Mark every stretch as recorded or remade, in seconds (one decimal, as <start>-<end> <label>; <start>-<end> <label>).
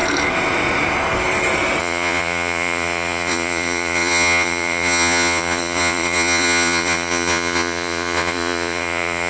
0.0-1.8 recorded; 1.8-9.3 remade